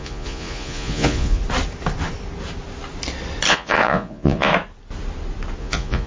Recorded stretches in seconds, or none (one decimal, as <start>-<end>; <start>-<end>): 1.4-3.5; 4.5-5.6